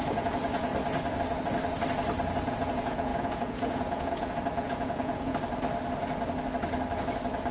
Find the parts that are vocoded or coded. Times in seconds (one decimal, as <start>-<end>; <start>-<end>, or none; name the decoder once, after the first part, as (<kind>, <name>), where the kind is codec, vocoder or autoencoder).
0.0-0.7 (vocoder, Vocos); 2.5-5.3